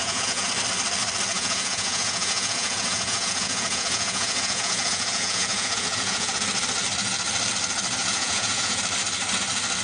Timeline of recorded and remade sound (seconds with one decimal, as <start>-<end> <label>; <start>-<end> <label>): 0.0-0.5 remade; 0.5-1.3 recorded; 1.3-6.3 remade; 6.3-8.0 recorded; 8.0-8.8 remade; 8.8-9.8 recorded